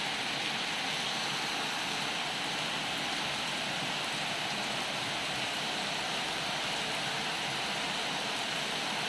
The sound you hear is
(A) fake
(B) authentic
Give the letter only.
B